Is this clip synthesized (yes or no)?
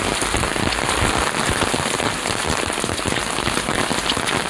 no